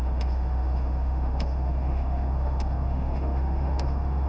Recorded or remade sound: remade